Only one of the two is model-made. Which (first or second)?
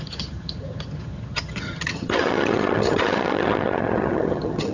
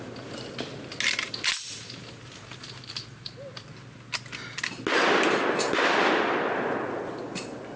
first